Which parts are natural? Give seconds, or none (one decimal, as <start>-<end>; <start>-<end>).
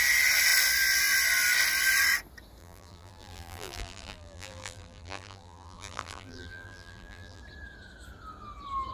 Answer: 0.0-2.6; 7.4-8.9